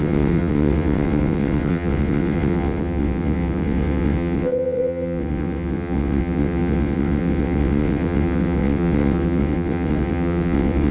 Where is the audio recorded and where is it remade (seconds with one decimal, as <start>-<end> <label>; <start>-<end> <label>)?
0.0-10.9 remade